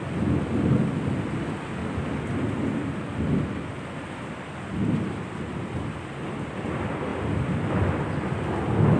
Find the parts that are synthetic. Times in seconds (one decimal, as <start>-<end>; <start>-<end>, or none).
none

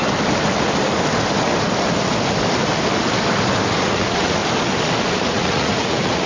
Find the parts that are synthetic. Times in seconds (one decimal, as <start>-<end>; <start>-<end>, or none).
3.8-4.4; 5.1-6.3

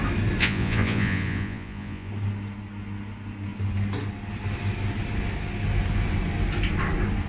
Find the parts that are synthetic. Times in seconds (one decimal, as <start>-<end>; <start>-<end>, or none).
0.4-2.1

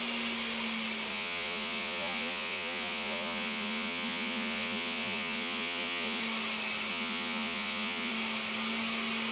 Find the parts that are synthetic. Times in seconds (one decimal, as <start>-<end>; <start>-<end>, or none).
1.1-6.2; 6.9-8.1

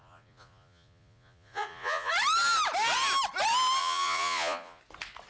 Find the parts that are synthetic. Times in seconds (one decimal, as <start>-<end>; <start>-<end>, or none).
0.0-2.1; 3.8-4.8

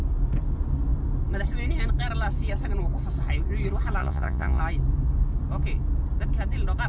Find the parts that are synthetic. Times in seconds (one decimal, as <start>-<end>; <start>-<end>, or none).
4.0-4.6